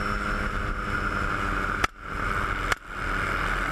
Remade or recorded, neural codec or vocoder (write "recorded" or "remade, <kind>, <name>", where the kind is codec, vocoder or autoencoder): recorded